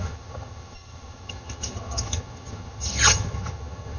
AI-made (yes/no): yes